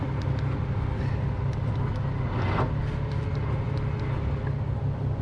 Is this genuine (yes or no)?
yes